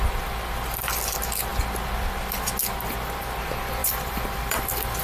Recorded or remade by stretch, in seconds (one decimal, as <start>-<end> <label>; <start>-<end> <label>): 0.0-3.8 recorded; 3.8-4.6 remade; 4.6-5.0 recorded